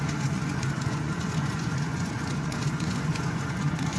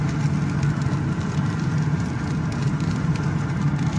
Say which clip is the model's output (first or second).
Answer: first